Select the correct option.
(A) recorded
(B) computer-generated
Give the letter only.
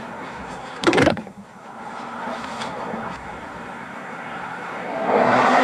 B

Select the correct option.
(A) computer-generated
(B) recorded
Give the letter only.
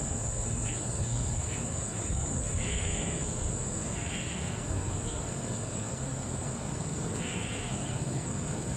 A